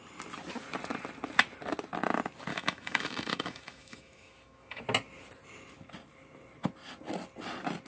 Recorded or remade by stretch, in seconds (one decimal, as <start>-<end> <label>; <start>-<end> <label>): 0.0-2.5 recorded; 2.5-4.8 remade; 4.8-7.9 recorded